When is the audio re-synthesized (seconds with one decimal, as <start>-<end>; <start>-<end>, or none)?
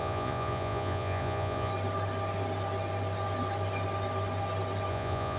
0.0-1.7; 4.9-5.4